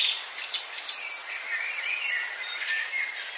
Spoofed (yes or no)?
no